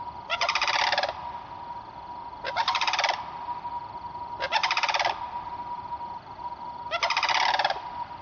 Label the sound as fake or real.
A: real